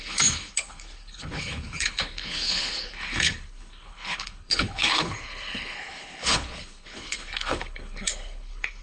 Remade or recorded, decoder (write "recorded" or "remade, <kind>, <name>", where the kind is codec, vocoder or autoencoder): remade, codec, HILCodec